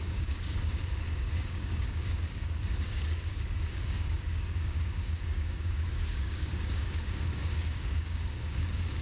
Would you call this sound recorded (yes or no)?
no